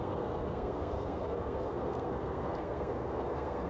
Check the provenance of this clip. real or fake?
fake